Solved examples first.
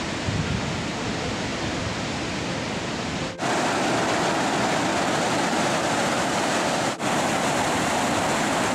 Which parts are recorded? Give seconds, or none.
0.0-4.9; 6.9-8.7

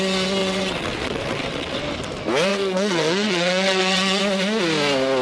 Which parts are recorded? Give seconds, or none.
0.0-0.4; 1.8-2.5; 4.2-5.2